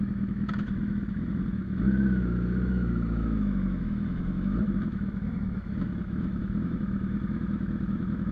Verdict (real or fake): fake